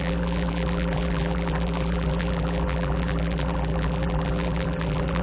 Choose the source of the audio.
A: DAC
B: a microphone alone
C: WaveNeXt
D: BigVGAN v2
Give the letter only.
D